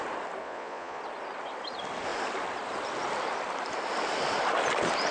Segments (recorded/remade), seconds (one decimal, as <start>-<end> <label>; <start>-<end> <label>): 0.0-0.4 recorded; 0.4-1.0 remade; 1.0-5.1 recorded